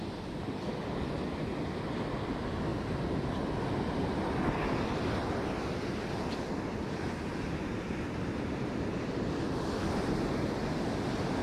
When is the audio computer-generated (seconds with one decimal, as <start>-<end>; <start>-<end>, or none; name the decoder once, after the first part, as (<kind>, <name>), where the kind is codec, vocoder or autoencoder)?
none

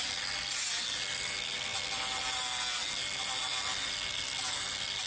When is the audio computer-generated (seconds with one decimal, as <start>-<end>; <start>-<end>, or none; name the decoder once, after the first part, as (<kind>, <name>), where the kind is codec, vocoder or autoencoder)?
none

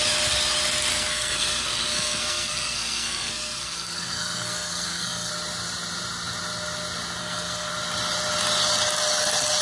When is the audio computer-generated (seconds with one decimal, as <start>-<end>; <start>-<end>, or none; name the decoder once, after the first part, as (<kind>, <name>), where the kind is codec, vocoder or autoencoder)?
0.9-5.3 (codec, SNAC); 7.2-7.7

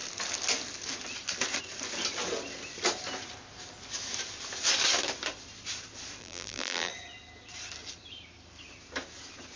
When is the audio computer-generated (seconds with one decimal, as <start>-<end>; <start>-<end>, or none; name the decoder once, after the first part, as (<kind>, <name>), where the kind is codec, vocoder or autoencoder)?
6.2-6.9 (vocoder, BigVGAN v2)

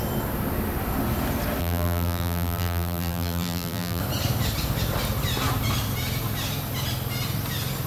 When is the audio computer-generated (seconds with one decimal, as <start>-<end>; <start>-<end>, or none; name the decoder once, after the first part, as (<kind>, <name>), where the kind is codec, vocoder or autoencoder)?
1.6-4.0 (vocoder, BigVGAN v2)